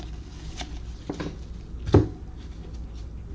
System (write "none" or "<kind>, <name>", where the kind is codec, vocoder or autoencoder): none